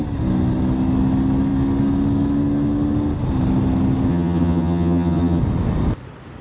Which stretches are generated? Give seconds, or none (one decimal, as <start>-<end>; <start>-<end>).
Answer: 4.1-5.4